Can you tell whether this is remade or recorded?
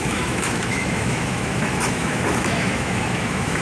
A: remade